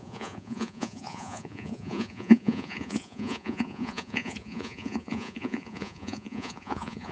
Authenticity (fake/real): fake